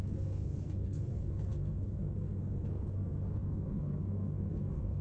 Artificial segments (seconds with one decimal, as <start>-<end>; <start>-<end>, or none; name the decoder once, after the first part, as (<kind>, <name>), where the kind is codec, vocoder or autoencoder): 0.0-5.0 (codec, SNAC)